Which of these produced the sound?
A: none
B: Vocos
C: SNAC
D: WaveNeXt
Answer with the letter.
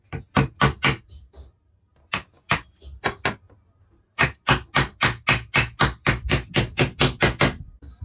A